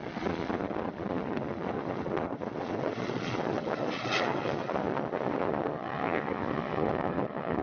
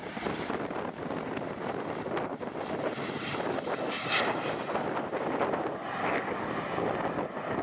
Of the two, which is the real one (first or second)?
second